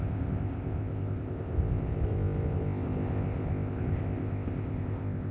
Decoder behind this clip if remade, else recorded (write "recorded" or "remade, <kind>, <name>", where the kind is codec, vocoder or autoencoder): remade, codec, ZipCodec